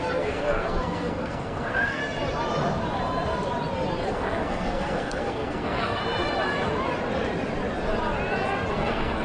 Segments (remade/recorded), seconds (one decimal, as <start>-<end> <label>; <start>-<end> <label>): 0.0-2.0 remade; 2.0-4.1 recorded; 4.1-6.0 remade; 6.0-8.7 recorded; 8.7-9.2 remade